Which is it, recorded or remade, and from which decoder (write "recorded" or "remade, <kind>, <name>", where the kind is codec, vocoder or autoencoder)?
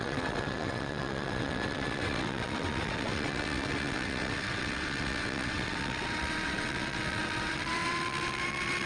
remade, vocoder, WaveNeXt